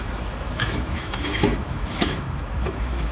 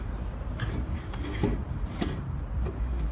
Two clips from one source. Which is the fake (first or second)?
first